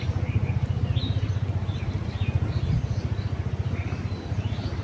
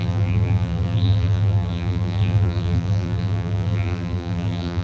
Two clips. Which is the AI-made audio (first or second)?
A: second